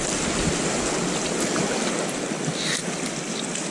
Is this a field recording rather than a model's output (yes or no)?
yes